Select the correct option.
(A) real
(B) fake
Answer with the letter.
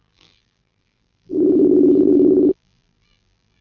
B